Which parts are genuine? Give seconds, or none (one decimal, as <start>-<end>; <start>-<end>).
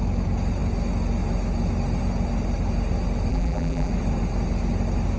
0.0-3.3; 3.9-5.2